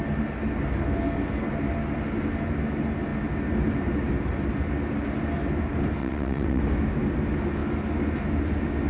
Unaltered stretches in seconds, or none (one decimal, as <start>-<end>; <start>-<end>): 0.0-6.0; 6.6-8.9